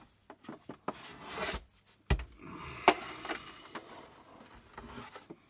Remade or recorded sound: recorded